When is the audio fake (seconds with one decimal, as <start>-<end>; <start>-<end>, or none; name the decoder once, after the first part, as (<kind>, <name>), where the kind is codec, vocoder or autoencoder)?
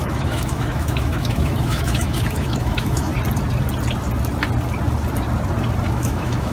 0.0-3.1 (autoencoder, DAC-VAE); 5.9-6.5